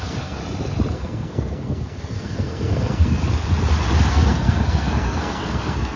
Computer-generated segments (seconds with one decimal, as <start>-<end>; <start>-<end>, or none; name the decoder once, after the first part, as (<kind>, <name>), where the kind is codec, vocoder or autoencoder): 0.0-0.4 (codec, SNAC); 0.9-3.2; 4.1-6.0